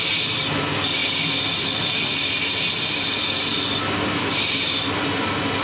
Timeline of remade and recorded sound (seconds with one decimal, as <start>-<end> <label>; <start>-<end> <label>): 0.0-5.6 recorded